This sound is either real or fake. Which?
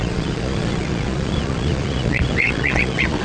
fake